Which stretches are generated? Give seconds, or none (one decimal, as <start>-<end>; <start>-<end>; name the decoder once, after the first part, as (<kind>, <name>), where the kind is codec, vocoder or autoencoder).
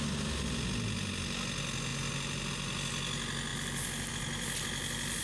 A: none